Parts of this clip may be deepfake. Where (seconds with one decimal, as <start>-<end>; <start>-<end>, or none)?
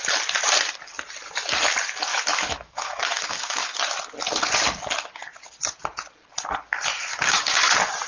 2.1-3.8